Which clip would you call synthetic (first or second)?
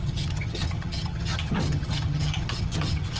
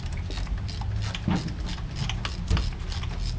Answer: first